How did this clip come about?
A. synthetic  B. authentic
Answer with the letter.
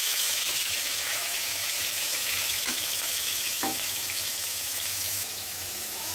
A